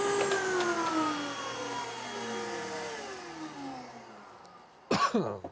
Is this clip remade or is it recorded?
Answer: recorded